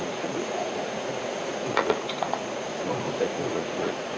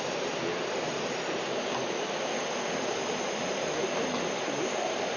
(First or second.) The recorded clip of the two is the second